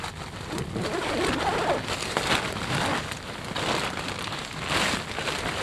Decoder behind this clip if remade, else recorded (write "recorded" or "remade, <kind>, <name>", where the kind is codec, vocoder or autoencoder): recorded